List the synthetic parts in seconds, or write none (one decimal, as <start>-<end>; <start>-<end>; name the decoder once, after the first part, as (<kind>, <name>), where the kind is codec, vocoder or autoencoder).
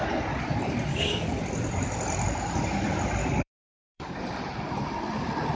0.9-1.4 (codec, DAC); 3.2-4.1